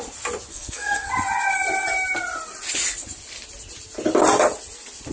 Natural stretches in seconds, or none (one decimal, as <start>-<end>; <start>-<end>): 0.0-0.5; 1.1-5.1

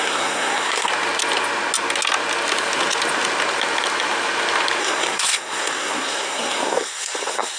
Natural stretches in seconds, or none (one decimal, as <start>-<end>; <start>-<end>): 0.9-4.8

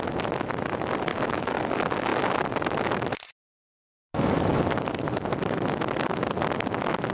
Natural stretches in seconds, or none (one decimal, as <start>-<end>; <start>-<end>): 0.0-1.1; 1.6-3.8; 4.6-7.1

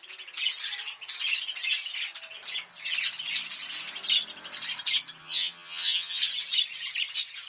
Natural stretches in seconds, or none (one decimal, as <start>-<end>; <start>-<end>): 0.0-5.2; 6.2-7.5

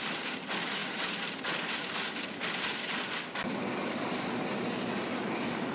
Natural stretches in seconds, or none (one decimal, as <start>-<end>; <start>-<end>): 0.0-5.7

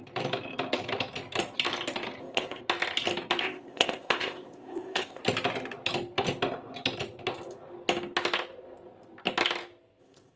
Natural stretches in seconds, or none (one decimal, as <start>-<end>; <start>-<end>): 0.0-2.2; 2.6-3.4; 5.2-10.0

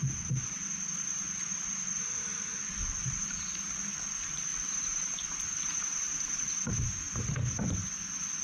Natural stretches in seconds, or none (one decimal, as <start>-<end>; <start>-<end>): 0.0-2.0; 2.6-8.4

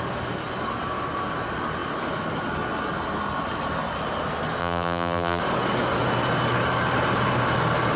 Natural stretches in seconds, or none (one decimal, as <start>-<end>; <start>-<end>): 0.0-4.6; 5.4-8.0